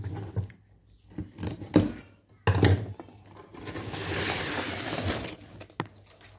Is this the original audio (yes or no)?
yes